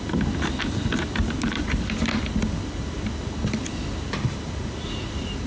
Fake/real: fake